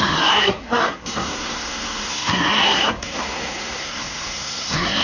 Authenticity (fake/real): fake